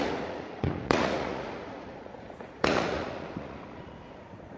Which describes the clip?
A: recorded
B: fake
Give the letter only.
B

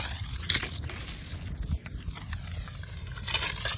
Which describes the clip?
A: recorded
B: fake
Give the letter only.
A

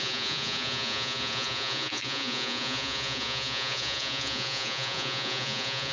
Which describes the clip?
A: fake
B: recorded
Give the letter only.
A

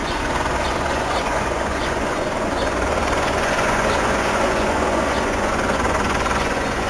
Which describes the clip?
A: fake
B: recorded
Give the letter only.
A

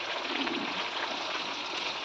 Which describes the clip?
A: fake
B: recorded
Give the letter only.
A